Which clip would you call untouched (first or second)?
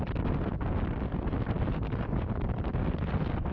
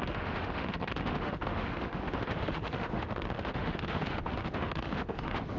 first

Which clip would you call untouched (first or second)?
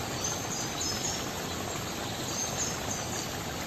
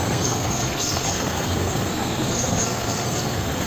first